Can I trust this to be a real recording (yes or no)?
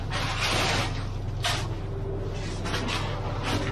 yes